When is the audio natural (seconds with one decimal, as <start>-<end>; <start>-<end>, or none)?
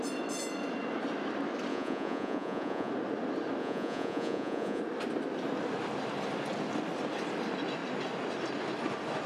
0.0-1.7; 2.9-3.6; 4.8-9.3